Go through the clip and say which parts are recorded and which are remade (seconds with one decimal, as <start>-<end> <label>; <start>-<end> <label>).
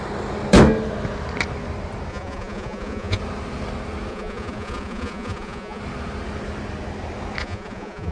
0.0-2.1 recorded; 2.1-3.2 remade; 3.2-4.1 recorded; 4.1-5.8 remade; 5.8-7.4 recorded; 7.4-8.1 remade